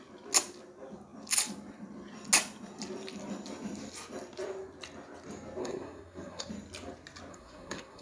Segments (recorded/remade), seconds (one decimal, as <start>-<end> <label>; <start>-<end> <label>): 0.0-5.6 recorded; 5.6-6.5 remade; 6.5-7.3 recorded; 7.3-8.0 remade